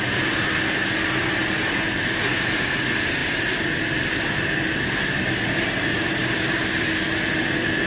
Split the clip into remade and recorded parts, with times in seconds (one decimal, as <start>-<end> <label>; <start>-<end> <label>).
0.0-7.9 recorded